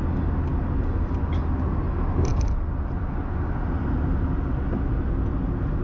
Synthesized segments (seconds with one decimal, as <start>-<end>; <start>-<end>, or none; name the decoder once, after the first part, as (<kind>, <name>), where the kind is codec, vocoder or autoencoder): none